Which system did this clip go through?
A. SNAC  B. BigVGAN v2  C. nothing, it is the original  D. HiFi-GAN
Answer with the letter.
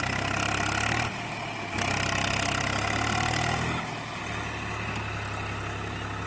C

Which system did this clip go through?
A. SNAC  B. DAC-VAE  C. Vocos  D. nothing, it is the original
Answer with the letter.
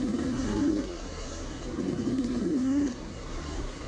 A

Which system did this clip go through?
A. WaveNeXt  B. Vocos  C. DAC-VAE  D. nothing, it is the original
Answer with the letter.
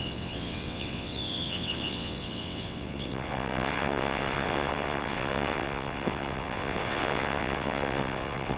A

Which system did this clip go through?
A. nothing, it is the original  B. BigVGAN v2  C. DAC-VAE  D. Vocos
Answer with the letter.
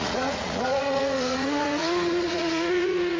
D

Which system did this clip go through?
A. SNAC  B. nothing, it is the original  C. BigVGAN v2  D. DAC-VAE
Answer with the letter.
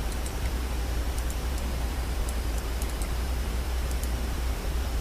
C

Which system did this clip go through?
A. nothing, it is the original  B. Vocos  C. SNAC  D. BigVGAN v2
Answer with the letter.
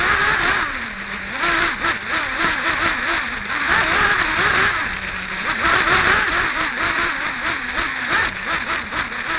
D